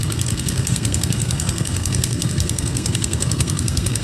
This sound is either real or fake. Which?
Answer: fake